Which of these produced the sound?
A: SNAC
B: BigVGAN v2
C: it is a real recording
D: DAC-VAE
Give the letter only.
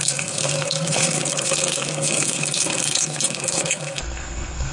A